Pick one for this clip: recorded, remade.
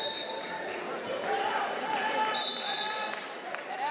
remade